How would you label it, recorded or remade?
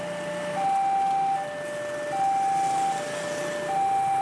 recorded